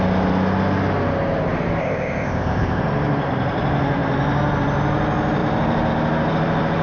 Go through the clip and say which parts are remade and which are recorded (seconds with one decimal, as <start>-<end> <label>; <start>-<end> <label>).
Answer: 0.0-1.8 recorded; 1.8-2.8 remade; 2.8-6.8 recorded